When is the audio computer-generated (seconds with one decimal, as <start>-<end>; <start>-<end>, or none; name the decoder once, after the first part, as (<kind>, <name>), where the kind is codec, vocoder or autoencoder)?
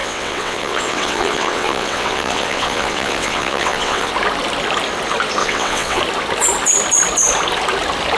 0.0-4.1 (vocoder, WaveNeXt); 5.4-6.0